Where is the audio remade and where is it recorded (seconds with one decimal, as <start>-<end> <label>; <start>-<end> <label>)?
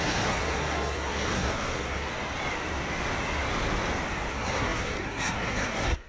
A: 0.0-2.1 remade; 2.1-4.3 recorded; 4.3-6.1 remade